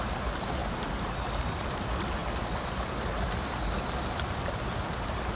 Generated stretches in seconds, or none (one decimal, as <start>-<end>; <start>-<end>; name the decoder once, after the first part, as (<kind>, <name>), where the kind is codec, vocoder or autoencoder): 0.6-1.1 (vocoder, BigVGAN v2)